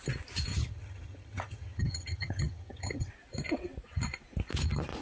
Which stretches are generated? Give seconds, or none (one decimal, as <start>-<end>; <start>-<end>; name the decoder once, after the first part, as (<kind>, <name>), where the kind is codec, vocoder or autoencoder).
0.5-3.1 (vocoder, HiFi-GAN)